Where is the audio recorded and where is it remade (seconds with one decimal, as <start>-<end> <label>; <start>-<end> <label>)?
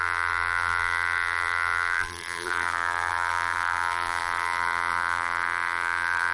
0.0-6.3 remade